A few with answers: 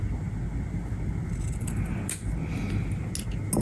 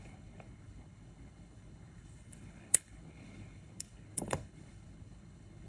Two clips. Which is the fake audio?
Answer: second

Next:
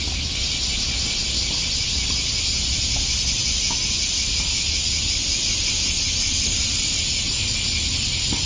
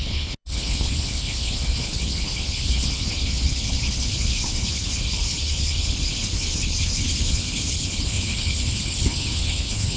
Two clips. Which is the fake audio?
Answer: second